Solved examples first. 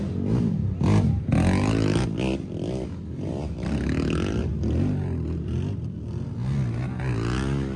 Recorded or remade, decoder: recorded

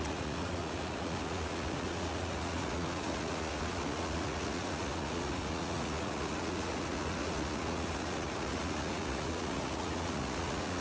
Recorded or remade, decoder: remade, vocoder, Vocos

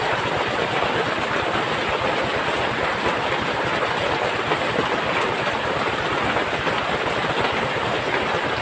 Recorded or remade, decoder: recorded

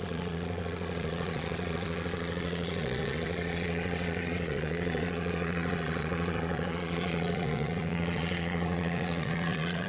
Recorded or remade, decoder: remade, vocoder, Vocos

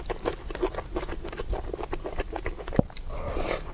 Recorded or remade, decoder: recorded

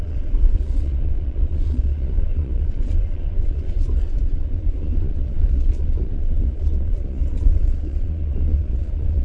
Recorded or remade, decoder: remade, vocoder, Vocos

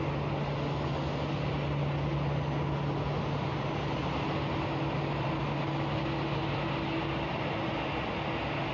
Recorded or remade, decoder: recorded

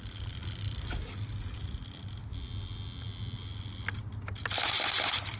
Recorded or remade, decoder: recorded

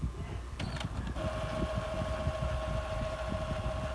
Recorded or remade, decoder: recorded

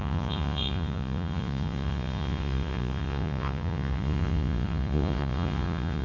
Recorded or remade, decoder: remade, vocoder, Vocos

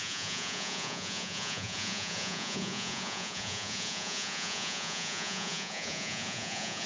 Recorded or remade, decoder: remade, vocoder, Vocos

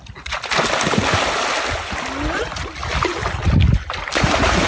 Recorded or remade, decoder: recorded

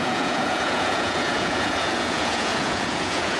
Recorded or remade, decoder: remade, vocoder, Vocos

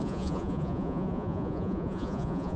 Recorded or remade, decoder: remade, vocoder, Vocos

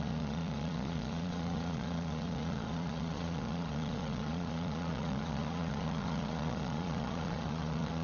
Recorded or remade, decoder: remade, vocoder, Vocos